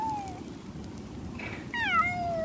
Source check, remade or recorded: recorded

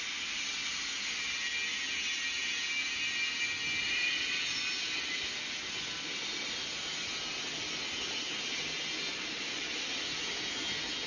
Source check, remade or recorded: recorded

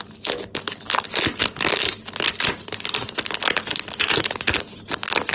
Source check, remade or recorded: recorded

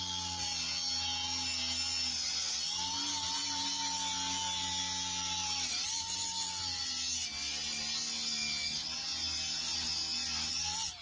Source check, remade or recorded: recorded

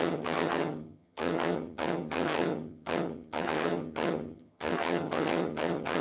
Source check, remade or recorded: remade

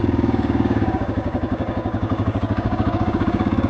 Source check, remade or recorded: remade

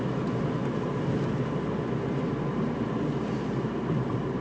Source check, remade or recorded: recorded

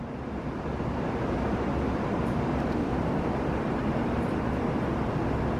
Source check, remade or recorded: recorded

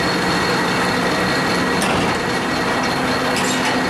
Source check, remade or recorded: recorded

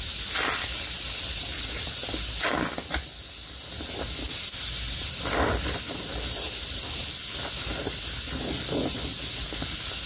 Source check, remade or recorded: recorded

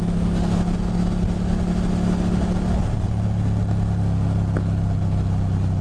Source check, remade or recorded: recorded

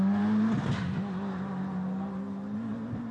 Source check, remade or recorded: recorded